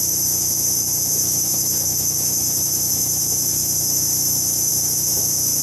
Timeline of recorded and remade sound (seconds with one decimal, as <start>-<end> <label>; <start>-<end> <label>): 0.0-5.6 remade